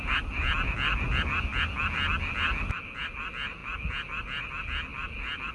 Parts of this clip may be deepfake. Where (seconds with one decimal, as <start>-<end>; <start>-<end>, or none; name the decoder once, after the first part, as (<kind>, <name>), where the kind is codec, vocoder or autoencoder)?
4.9-5.5 (vocoder, BigVGAN v2)